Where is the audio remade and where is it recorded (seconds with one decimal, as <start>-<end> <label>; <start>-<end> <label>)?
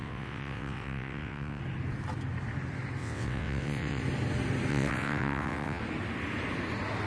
0.0-1.6 remade; 1.6-3.0 recorded; 3.0-4.0 remade; 4.0-4.7 recorded; 4.7-5.8 remade; 5.8-7.1 recorded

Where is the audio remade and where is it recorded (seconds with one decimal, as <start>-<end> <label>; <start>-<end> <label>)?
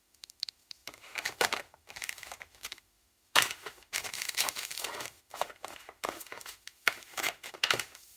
0.0-8.2 remade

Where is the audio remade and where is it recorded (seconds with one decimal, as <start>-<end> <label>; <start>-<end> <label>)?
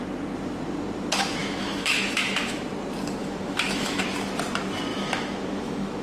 0.0-1.4 recorded; 1.4-2.7 remade; 2.7-3.2 recorded; 3.2-4.0 remade; 4.0-4.9 recorded; 4.9-6.0 remade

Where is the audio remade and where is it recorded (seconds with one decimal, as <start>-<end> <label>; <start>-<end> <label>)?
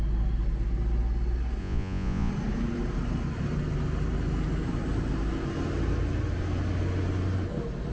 0.0-1.6 recorded; 1.6-2.3 remade; 2.3-7.9 recorded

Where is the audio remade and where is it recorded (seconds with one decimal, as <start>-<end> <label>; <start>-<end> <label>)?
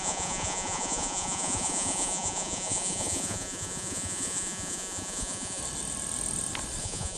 0.0-5.6 remade; 5.6-6.8 recorded; 6.8-7.2 remade